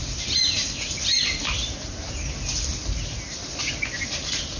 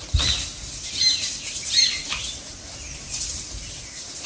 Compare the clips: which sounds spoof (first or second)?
second